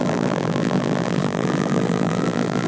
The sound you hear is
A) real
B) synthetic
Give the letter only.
B